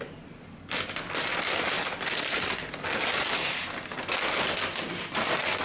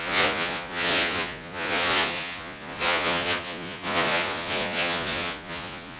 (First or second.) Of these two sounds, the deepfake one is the second